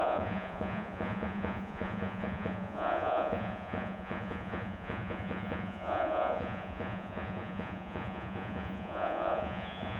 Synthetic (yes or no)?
yes